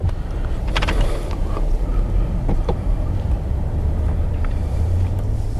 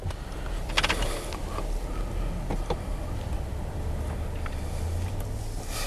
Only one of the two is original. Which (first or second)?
second